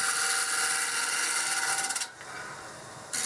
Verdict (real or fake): real